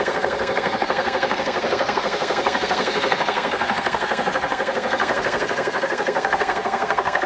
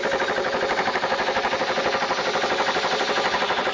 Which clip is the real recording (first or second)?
second